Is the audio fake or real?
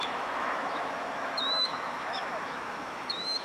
fake